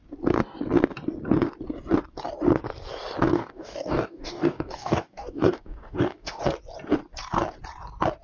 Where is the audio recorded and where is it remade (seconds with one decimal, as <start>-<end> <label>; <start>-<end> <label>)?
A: 0.0-3.3 recorded; 3.3-6.4 remade; 6.4-8.2 recorded